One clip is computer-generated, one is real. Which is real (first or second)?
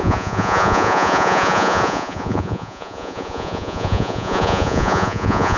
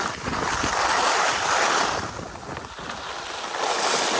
second